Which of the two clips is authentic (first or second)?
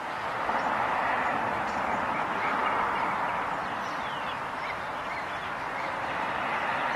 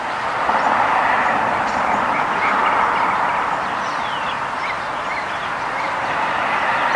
second